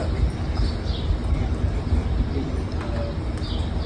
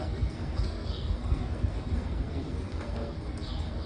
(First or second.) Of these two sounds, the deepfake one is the second